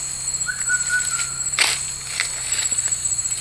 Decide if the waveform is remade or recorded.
recorded